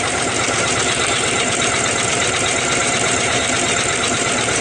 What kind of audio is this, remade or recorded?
remade